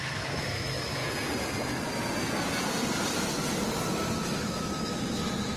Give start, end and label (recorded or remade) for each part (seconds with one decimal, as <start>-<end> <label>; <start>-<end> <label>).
0.0-1.0 remade; 1.0-4.4 recorded; 4.4-5.6 remade

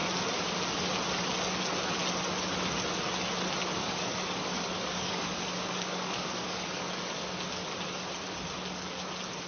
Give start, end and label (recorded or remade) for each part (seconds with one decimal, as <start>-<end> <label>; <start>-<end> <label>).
0.0-3.8 recorded; 3.8-7.3 remade; 7.3-9.5 recorded

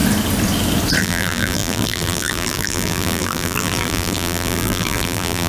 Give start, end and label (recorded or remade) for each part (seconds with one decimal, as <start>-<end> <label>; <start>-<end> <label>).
0.0-1.0 recorded; 1.0-5.5 remade

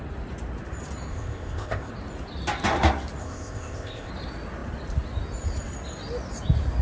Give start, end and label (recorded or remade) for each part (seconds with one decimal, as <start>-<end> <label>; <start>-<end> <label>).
0.0-1.1 recorded; 1.1-1.9 remade; 1.9-3.2 recorded; 3.2-4.1 remade; 4.1-6.8 recorded

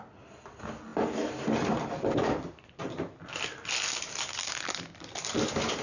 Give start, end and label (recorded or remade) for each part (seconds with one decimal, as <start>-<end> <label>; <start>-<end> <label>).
0.0-5.8 recorded